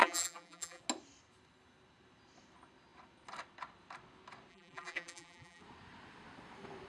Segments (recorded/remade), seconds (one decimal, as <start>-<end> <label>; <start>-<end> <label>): 0.0-0.8 remade; 0.8-4.5 recorded; 4.5-5.6 remade; 5.6-6.9 recorded